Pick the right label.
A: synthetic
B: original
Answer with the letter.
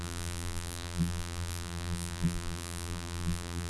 A